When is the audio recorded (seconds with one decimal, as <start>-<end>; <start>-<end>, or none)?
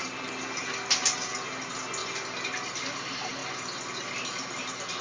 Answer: 0.0-5.0